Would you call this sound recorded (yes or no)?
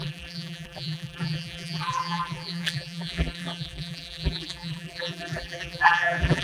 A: no